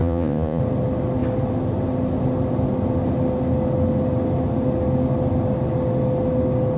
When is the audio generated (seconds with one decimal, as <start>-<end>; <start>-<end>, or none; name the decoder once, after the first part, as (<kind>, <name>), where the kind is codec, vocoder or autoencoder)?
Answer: 0.0-0.6 (vocoder, Vocos)